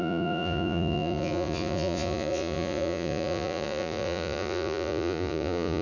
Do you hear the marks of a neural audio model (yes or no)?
yes